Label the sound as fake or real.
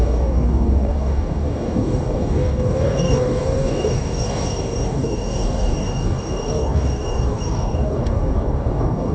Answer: fake